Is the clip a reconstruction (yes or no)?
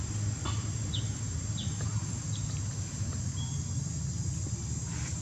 no